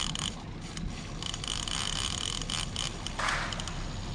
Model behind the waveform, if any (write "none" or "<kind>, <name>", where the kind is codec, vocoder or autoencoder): none